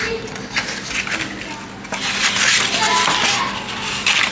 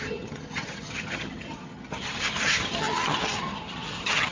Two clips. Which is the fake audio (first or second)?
second